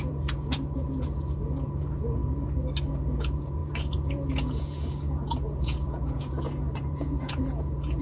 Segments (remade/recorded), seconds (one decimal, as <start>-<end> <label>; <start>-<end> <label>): 0.0-2.2 remade; 2.2-2.9 recorded; 2.9-8.0 remade